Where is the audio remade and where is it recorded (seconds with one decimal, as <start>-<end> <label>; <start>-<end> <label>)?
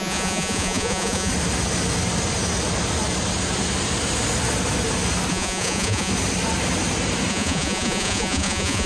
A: 0.0-1.3 remade; 1.3-5.3 recorded; 5.3-6.1 remade; 6.1-7.3 recorded; 7.3-8.9 remade